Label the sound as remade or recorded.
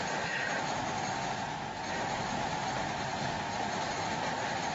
recorded